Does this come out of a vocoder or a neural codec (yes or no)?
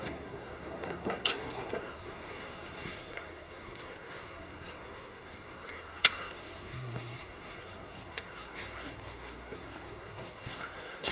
yes